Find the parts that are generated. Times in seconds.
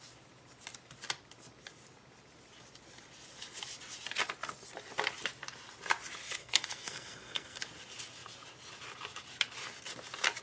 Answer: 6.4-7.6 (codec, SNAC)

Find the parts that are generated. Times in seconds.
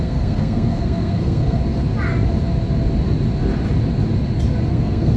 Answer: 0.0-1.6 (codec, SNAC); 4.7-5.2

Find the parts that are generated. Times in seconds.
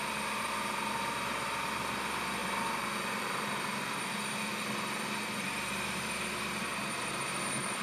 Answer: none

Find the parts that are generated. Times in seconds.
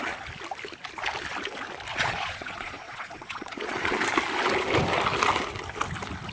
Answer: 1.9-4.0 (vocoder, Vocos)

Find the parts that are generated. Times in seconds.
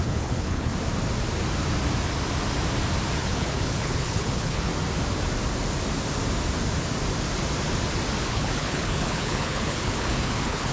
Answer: 0.0-0.7 (codec, HILCodec); 3.2-4.7; 8.3-10.7